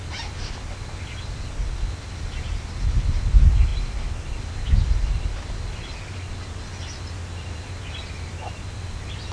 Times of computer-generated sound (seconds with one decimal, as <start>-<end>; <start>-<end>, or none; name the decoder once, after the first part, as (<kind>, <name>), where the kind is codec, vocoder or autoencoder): none